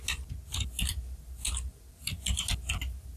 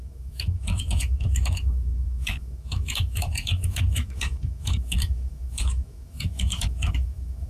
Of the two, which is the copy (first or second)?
second